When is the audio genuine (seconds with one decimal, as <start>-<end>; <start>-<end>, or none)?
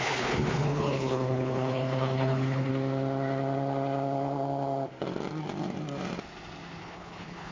2.7-6.8